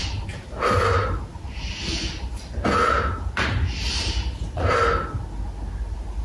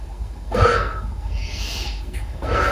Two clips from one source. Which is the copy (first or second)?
second